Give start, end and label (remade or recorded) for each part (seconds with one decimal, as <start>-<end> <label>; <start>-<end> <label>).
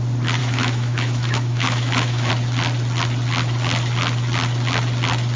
0.0-0.4 recorded; 0.4-2.3 remade; 2.3-5.4 recorded